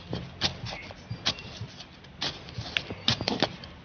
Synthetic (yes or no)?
no